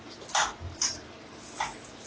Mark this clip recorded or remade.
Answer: recorded